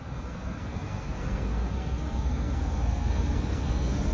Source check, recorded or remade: remade